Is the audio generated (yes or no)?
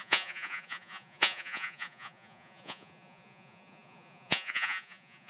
yes